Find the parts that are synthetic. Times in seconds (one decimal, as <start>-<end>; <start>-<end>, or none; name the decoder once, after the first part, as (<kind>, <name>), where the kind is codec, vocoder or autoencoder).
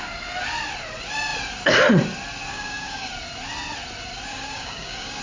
2.5-3.1 (codec, DAC); 4.3-5.2